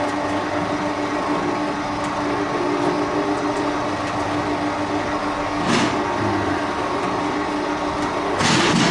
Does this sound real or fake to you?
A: real